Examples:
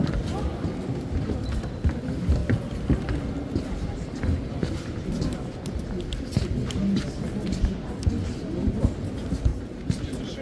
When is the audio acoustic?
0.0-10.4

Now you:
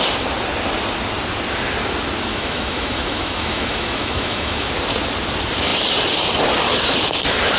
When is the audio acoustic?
0.0-2.3; 4.7-7.6

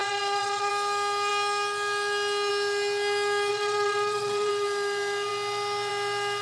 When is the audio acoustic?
0.7-3.5; 4.5-6.4

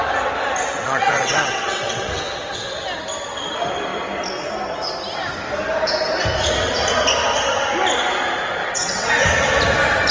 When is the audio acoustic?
0.0-0.7; 2.8-8.6; 9.1-10.1

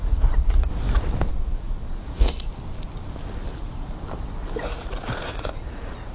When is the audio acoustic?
0.7-1.3; 2.5-4.6

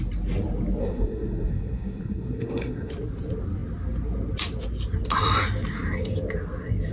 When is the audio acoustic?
0.0-0.8; 2.9-6.9

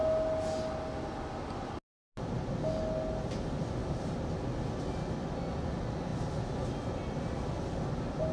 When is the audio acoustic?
0.0-8.3

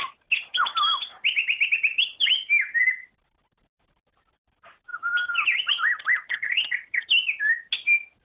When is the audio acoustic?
0.0-8.2